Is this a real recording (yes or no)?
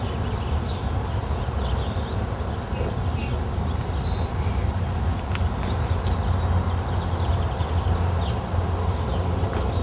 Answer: yes